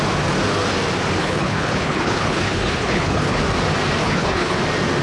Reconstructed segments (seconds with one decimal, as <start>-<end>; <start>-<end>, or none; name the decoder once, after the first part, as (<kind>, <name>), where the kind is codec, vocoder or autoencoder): 1.2-3.4 (codec, HILCodec); 4.0-4.6